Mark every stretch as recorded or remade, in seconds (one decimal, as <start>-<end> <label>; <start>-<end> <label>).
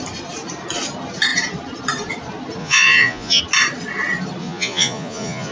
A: 0.0-2.6 recorded; 2.6-3.4 remade; 3.4-4.4 recorded; 4.4-5.5 remade